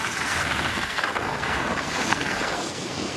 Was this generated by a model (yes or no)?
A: yes